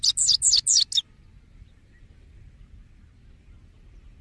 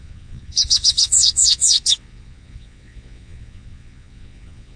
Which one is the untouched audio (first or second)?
first